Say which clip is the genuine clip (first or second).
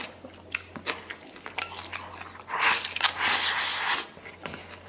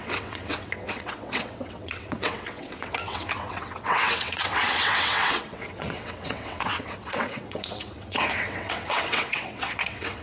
first